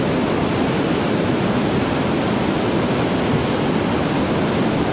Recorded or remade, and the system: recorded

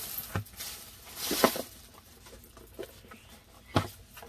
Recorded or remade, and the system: recorded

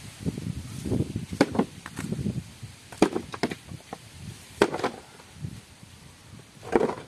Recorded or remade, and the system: remade, vocoder, BigVGAN v2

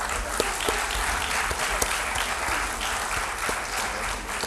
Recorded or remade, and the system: recorded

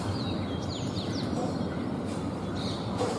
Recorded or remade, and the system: remade, vocoder, BigVGAN v2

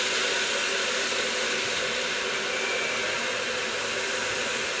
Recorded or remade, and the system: recorded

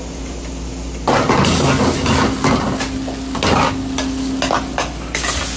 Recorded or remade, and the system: recorded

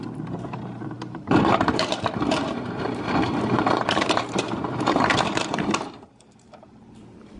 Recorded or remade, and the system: remade, vocoder, BigVGAN v2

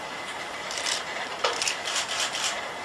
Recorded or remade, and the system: remade, vocoder, BigVGAN v2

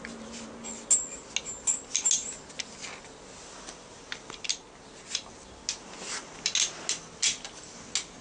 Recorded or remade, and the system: recorded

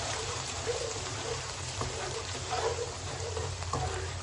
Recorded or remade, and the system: remade, vocoder, BigVGAN v2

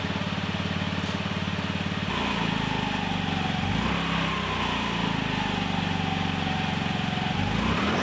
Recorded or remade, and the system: recorded